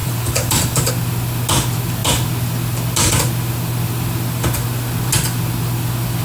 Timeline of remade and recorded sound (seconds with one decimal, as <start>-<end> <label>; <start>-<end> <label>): 0.0-0.9 remade; 0.9-6.2 recorded